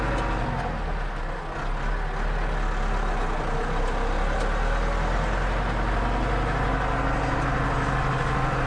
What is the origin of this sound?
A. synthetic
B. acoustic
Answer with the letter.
B